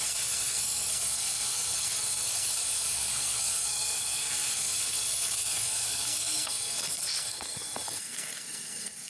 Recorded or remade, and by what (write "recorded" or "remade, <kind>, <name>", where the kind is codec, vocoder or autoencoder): remade, codec, SNAC